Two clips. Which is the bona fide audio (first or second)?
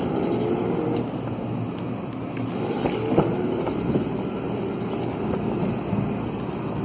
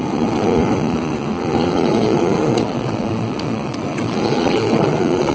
first